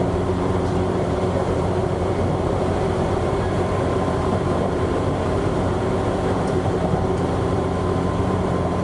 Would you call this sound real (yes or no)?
no